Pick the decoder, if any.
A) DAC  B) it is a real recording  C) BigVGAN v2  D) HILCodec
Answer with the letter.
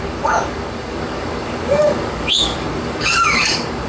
A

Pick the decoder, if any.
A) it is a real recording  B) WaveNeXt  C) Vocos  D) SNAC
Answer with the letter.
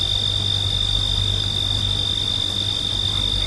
A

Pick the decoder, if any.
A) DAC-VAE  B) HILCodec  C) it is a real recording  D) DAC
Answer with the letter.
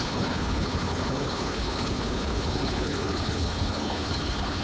B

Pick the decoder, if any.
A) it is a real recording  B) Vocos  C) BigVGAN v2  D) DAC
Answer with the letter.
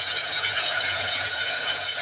B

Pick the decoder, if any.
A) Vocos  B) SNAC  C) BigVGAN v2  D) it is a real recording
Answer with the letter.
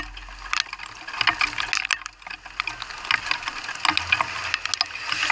D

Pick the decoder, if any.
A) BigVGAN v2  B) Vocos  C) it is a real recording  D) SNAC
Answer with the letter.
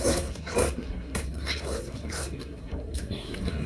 D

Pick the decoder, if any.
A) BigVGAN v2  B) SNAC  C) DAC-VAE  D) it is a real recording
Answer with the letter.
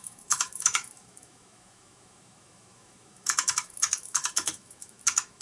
C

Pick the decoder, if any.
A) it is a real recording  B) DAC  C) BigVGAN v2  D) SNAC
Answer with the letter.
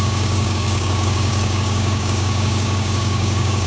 B